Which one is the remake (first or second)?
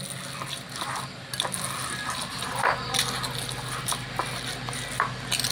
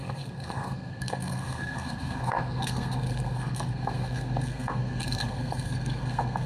second